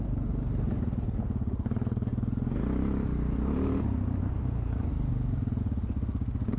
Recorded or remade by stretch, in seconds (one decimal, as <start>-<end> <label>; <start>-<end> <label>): 0.0-6.6 recorded